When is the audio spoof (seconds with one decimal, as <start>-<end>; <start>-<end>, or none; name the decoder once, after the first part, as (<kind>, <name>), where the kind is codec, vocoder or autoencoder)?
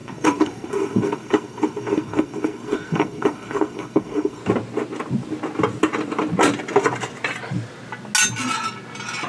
0.0-4.4 (codec, SNAC)